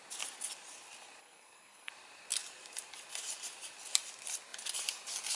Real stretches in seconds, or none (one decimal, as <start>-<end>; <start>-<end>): 0.0-1.2; 1.9-5.3